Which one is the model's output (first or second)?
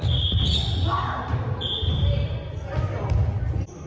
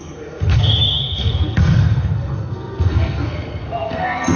second